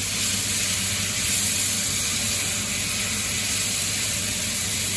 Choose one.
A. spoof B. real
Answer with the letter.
B